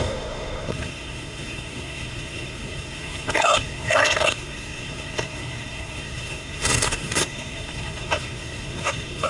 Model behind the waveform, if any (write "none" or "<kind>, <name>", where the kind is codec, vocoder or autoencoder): codec, SNAC